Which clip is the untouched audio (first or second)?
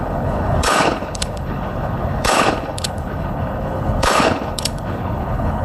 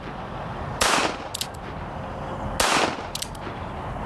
second